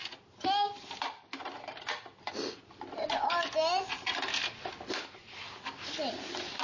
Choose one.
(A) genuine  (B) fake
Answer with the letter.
A